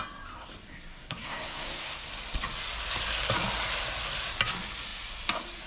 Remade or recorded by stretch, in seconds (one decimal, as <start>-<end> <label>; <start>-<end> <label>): 0.0-0.7 recorded; 0.7-2.1 remade; 2.1-5.7 recorded